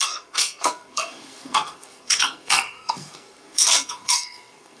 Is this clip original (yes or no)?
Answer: no